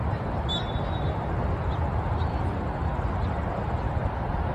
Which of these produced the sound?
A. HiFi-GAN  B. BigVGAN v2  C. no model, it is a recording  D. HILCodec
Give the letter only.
C